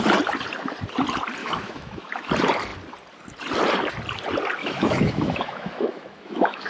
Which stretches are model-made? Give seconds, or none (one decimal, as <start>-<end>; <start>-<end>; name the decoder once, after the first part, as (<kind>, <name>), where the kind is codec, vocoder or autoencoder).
1.4-2.3 (autoencoder, DAC-VAE); 4.6-6.7